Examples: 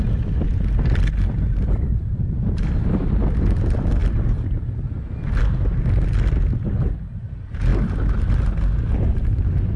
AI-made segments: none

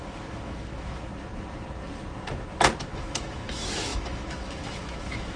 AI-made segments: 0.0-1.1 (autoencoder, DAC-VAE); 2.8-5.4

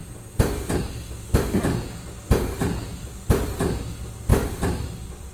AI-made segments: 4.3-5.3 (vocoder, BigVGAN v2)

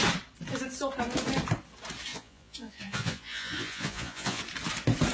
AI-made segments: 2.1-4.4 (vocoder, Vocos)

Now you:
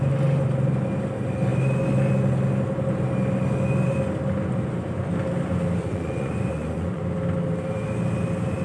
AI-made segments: 5.8-7.0 (vocoder, Vocos)

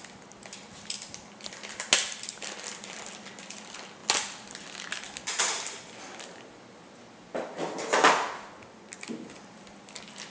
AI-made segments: none